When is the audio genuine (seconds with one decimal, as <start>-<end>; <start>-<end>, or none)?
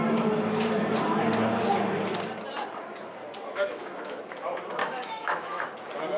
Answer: 0.0-3.5; 4.2-4.8; 5.6-6.2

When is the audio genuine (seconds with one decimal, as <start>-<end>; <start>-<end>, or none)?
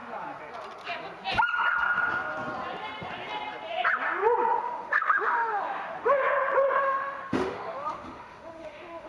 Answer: 0.0-4.6; 6.2-6.8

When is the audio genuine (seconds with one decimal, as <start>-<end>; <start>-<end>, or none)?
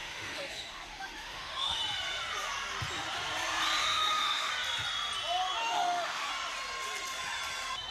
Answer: 1.8-3.8; 4.5-5.6; 6.3-7.9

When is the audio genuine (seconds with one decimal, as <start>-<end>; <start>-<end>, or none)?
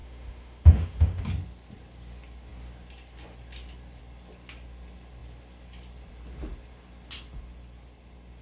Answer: 1.2-8.4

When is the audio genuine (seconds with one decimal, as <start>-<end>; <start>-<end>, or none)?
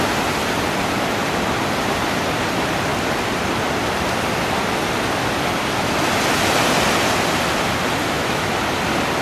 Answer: 0.0-8.0; 8.5-9.2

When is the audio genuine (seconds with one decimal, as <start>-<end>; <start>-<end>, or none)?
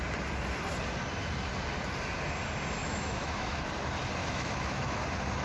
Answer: 0.0-2.8; 3.6-4.2; 5.0-5.4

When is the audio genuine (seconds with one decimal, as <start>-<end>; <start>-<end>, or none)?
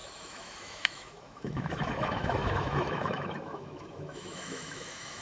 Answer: none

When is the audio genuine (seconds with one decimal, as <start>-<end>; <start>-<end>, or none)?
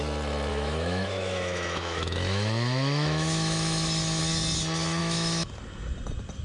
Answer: 0.0-0.5; 4.2-5.0; 5.5-6.4